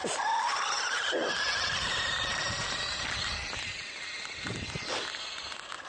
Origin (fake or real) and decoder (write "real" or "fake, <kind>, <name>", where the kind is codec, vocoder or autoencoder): real